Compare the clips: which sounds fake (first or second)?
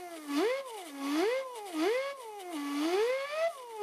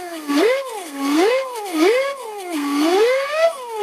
second